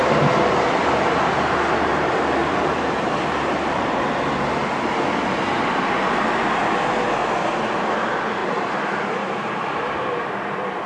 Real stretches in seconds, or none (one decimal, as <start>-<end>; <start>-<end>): 0.0-2.4; 4.1-8.4; 10.5-10.9